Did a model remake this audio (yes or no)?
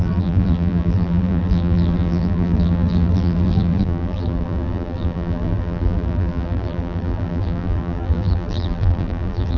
yes